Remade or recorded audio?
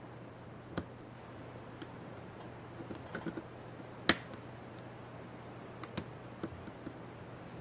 recorded